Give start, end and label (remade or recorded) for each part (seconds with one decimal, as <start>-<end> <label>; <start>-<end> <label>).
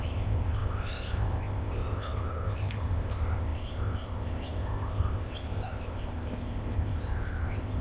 0.0-7.8 remade